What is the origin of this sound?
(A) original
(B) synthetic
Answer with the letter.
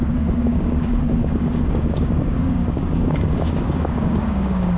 B